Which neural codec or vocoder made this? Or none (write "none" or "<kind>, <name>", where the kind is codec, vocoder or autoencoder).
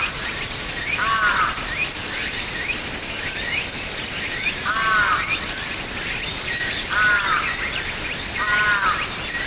none